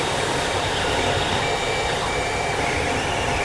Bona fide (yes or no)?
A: no